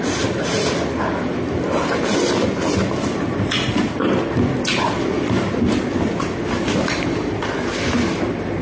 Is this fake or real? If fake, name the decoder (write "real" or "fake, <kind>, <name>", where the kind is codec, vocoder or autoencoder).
real